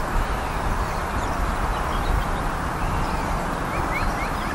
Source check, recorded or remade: recorded